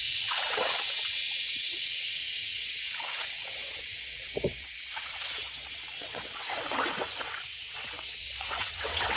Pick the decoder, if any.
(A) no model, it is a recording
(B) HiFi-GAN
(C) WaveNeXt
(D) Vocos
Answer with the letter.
C